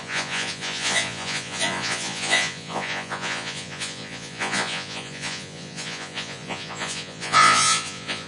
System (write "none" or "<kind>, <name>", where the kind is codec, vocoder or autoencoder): vocoder, Vocos